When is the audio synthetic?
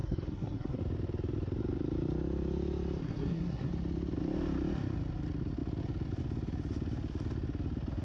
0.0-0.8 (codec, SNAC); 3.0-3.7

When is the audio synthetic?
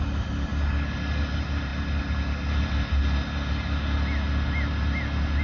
none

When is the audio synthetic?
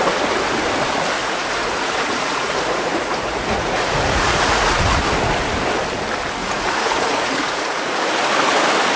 1.2-5.0 (vocoder, Vocos); 6.4-8.0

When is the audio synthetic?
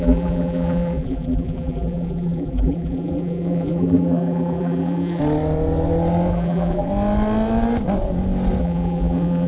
0.0-5.2 (vocoder, BigVGAN v2); 6.3-6.9; 8.6-9.5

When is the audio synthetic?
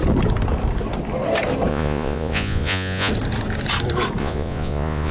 1.7-3.1 (vocoder, Vocos); 4.2-5.1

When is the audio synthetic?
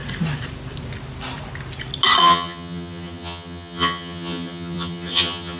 2.2-5.6 (vocoder, HiFi-GAN)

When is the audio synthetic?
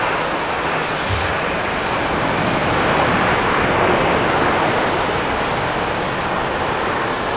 none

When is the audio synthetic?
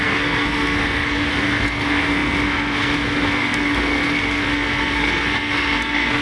0.0-6.2 (codec, SNAC)